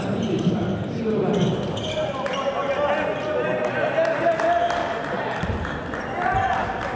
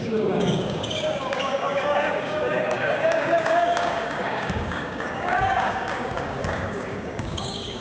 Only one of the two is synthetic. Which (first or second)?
second